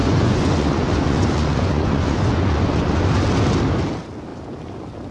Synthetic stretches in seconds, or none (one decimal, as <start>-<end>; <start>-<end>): 0.0-3.1